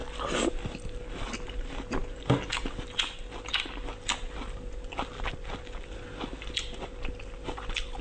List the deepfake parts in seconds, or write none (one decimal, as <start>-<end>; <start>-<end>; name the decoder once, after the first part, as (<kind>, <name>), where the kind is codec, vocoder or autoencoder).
none